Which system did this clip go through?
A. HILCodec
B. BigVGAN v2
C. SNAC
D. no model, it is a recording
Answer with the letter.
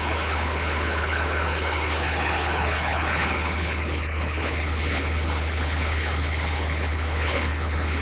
A